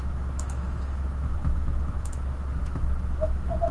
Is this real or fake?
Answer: fake